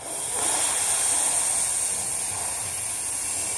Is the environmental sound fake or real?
real